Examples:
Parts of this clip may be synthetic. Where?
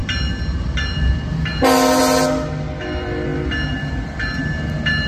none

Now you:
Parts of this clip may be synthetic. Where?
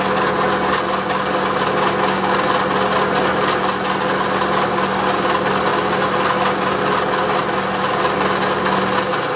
none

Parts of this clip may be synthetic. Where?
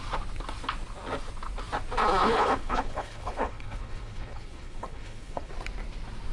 2.2-5.5 (codec, HILCodec)